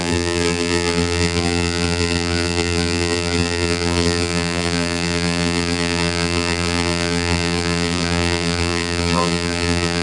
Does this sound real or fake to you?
fake